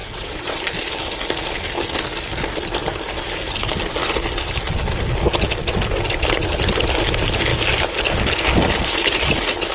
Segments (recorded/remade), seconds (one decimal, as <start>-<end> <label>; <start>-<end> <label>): 0.0-0.6 remade; 0.6-9.7 recorded